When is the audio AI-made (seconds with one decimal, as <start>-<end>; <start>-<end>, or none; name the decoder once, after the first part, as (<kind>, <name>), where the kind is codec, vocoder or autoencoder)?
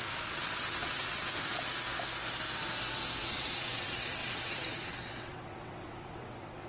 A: 0.0-1.5 (vocoder, WaveNeXt); 3.3-6.7